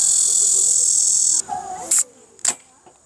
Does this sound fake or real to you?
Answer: real